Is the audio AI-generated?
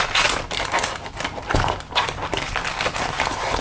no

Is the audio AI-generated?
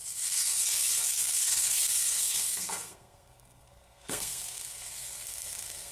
yes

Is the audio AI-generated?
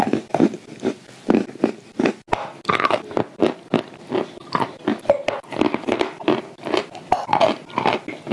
no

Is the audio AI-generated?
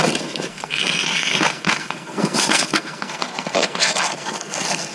yes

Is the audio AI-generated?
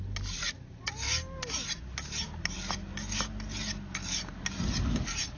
no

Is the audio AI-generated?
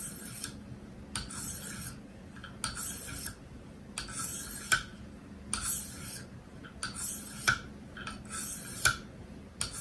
no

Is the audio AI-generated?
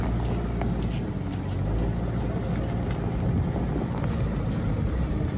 no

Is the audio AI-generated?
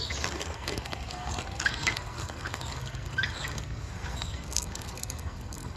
yes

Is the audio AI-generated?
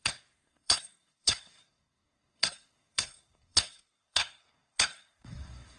yes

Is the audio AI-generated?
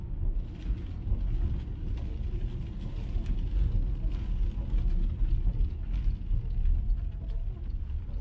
no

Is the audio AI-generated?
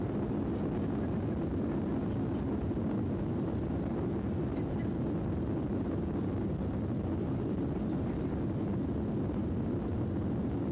no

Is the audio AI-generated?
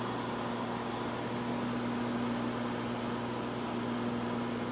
no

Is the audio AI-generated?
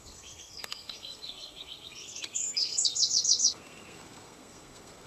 yes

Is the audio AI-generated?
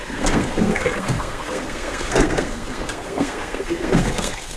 yes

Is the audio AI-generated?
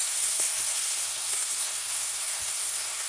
yes